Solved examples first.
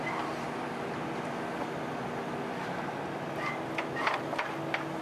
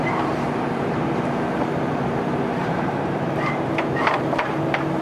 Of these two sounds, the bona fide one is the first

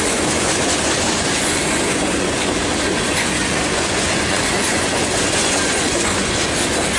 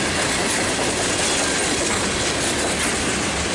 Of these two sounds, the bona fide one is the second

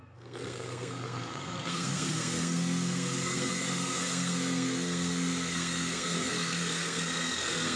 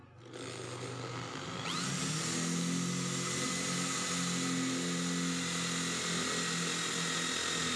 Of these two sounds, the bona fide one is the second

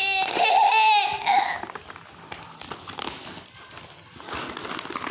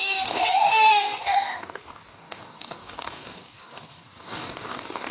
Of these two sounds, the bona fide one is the first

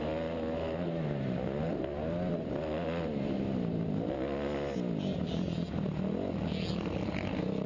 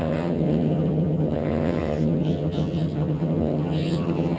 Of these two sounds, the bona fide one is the first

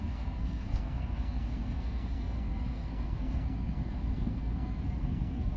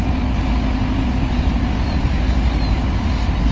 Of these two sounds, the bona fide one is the second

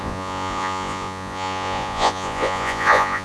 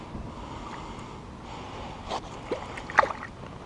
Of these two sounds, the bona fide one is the second